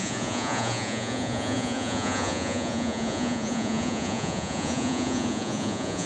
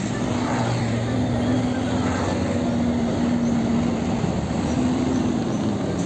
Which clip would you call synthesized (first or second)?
first